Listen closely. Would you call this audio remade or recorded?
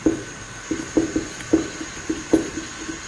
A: recorded